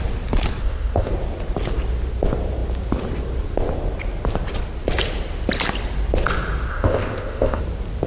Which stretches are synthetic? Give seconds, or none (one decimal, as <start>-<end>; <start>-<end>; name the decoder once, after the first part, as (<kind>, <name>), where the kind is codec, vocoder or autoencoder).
0.6-1.1 (codec, ZipCodec); 6.7-7.6